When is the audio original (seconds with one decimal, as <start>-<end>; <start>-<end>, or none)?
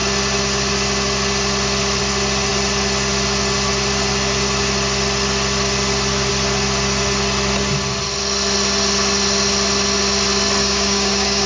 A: 0.0-10.6